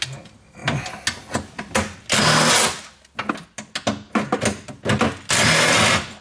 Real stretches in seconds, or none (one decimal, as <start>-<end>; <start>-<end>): 0.0-6.2